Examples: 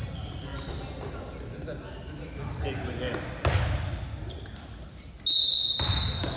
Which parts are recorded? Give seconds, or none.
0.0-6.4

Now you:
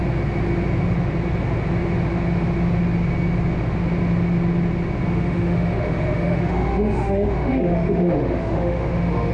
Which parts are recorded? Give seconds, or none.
0.0-5.1